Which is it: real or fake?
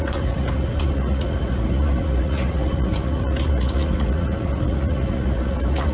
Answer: fake